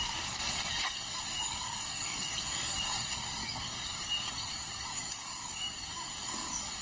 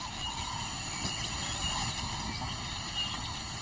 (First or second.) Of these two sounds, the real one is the second